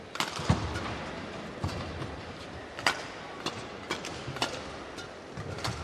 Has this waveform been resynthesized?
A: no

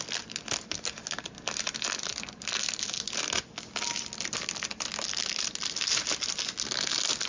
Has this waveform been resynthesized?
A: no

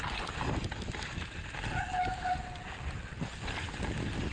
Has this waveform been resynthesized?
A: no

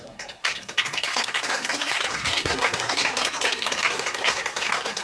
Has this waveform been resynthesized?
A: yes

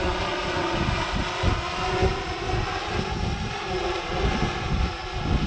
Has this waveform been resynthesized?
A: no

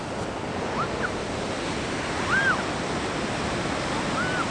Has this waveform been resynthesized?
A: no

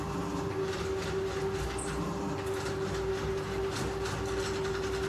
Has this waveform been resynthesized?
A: no